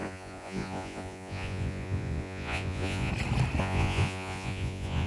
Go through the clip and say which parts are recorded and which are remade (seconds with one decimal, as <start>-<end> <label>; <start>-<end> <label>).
0.0-3.1 remade; 3.1-3.6 recorded; 3.6-5.1 remade